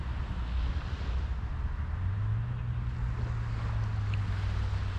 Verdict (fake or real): real